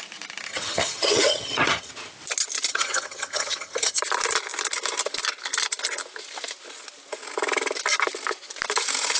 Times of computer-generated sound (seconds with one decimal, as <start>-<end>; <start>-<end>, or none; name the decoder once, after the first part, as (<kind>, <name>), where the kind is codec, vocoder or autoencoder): 0.5-1.9 (vocoder, HiFi-GAN); 2.7-4.0

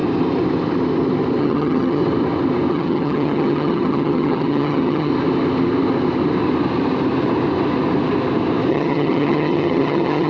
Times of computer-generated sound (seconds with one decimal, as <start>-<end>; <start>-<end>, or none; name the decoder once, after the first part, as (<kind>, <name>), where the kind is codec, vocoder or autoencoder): 1.4-2.0 (vocoder, HiFi-GAN); 2.7-5.1; 8.7-10.3

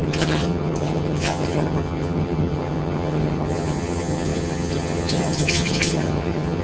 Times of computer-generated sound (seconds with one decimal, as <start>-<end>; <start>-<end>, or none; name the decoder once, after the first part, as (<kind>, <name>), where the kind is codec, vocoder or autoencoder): 0.0-6.6 (vocoder, HiFi-GAN)